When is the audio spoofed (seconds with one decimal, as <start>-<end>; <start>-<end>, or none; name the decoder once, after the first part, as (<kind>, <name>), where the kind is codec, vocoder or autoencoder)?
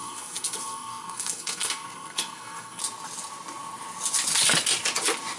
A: 0.0-2.8 (codec, SNAC)